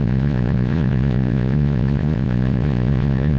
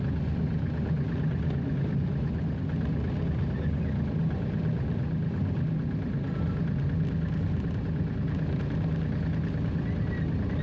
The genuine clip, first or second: second